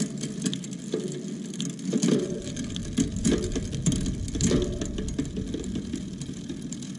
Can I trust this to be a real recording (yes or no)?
yes